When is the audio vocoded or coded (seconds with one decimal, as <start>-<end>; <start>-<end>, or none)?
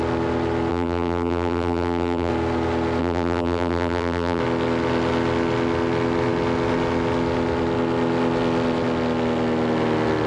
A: 0.7-2.3; 3.0-4.4